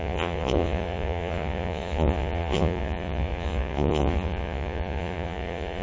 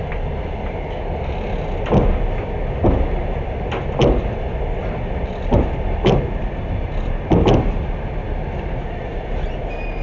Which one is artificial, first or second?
first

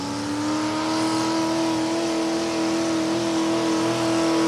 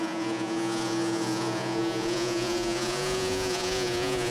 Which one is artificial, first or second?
second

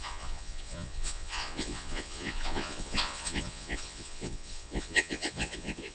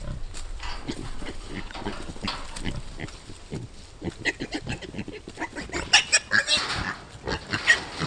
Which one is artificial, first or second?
first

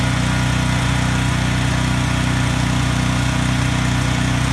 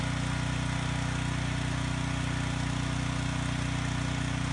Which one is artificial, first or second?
first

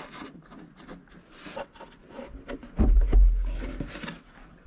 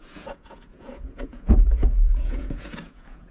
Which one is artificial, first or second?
second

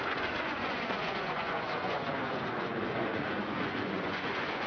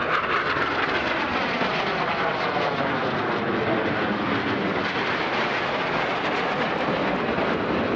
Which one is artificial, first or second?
first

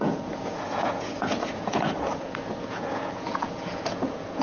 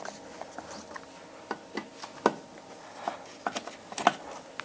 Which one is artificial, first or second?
first